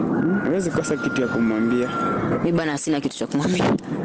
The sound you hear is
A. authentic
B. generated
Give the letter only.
A